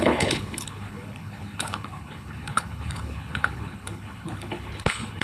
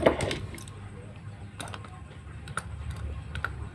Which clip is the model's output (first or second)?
first